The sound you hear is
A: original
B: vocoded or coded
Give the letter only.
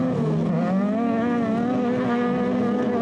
A